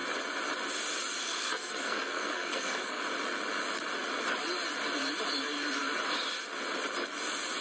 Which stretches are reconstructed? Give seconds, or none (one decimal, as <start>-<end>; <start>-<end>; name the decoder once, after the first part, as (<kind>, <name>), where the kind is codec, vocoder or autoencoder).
1.2-3.0 (codec, SNAC)